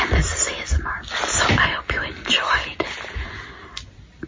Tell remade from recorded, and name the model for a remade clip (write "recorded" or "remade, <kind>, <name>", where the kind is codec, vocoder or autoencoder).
recorded